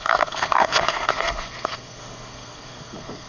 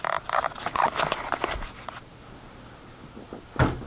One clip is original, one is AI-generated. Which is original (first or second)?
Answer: second